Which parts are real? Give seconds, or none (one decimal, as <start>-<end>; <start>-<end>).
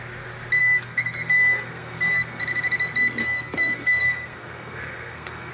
0.0-0.6; 2.4-3.2